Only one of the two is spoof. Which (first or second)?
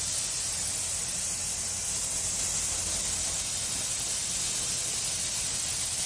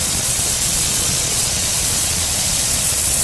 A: second